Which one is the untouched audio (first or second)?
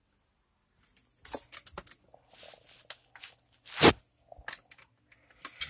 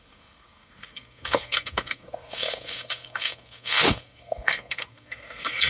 first